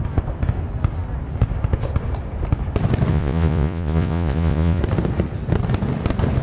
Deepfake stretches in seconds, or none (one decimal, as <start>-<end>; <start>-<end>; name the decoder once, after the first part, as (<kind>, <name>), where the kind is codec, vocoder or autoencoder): 3.1-4.8 (vocoder, Vocos)